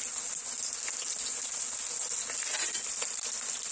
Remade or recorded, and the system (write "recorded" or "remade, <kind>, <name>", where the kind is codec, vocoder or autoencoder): recorded